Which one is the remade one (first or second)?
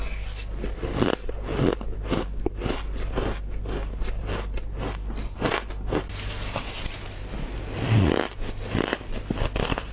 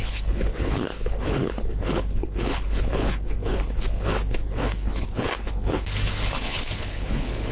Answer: second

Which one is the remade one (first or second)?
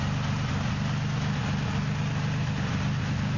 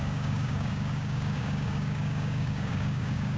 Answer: second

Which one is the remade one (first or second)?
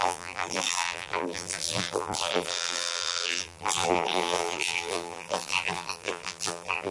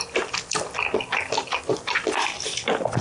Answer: first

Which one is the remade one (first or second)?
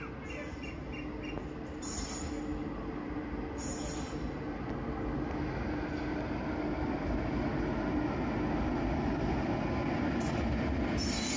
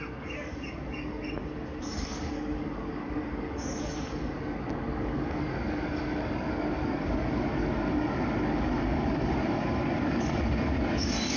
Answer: second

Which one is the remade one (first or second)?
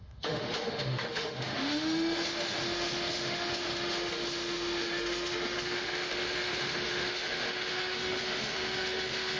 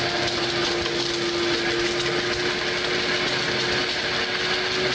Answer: first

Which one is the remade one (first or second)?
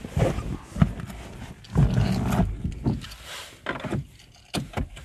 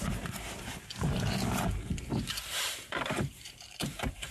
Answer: second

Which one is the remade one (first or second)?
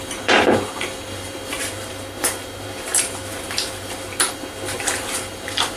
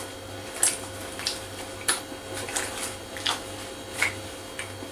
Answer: first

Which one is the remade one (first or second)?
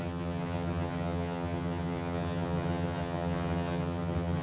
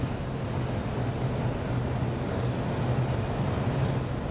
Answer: first